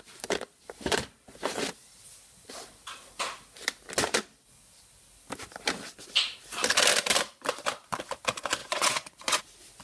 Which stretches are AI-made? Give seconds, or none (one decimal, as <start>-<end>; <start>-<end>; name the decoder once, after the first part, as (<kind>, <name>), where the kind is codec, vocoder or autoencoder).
8.6-9.4 (vocoder, Vocos)